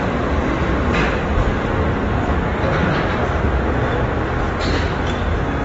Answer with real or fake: real